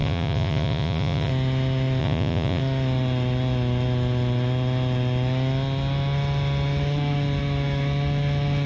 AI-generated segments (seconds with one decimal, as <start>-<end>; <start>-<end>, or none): 0.0-1.3; 2.0-2.6